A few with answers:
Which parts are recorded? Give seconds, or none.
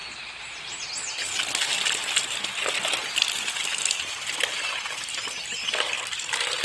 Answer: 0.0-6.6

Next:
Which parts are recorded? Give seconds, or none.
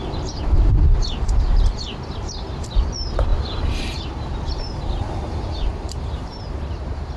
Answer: 0.7-2.2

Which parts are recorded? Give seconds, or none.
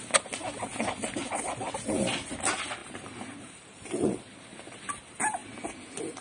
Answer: 0.0-2.8; 4.8-6.2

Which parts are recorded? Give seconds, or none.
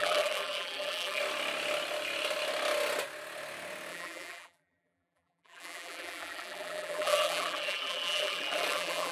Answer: 1.2-3.9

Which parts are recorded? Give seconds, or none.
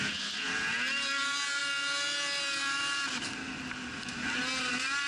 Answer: 0.0-5.1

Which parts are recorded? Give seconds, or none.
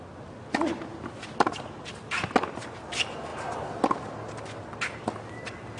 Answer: 0.0-0.9; 1.9-5.8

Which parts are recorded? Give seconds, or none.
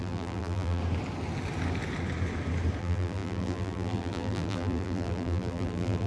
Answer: 0.8-2.8